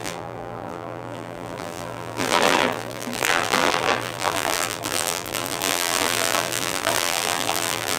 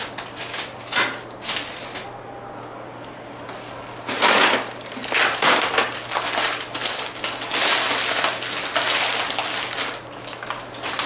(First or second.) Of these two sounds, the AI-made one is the first